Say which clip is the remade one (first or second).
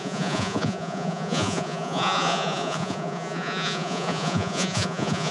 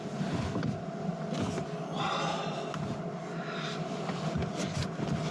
first